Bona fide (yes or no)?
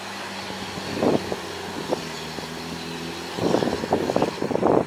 yes